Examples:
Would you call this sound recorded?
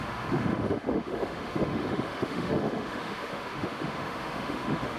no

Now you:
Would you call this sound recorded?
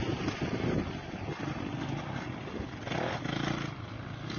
yes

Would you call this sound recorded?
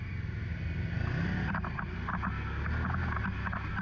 yes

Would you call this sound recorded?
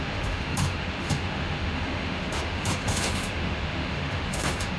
no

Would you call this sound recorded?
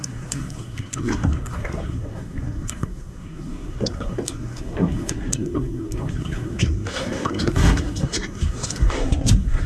no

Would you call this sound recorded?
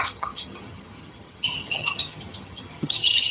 no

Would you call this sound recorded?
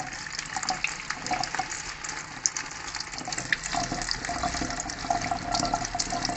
yes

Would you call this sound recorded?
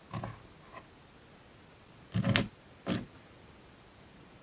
yes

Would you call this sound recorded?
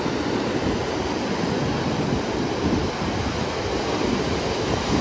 yes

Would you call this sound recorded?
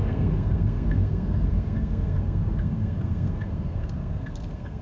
no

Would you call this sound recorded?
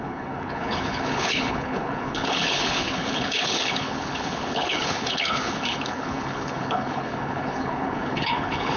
no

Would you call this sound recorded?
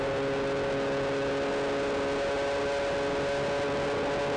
yes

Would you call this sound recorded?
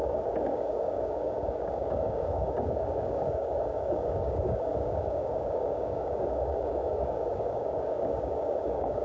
no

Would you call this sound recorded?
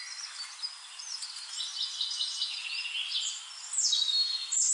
yes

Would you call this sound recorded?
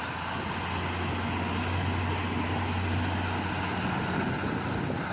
yes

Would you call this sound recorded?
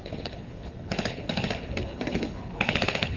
no